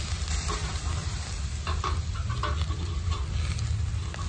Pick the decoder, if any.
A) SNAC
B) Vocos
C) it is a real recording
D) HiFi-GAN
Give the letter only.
C